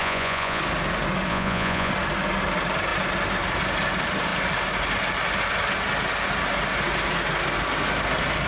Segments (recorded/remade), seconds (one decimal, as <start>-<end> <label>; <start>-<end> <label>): 0.0-0.6 remade; 0.6-1.3 recorded; 1.3-1.9 remade; 1.9-8.5 recorded